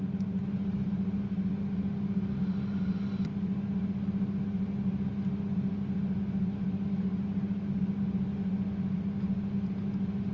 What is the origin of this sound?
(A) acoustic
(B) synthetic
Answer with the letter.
A